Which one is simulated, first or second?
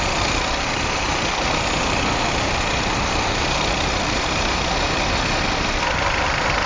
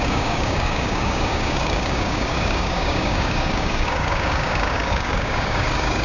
second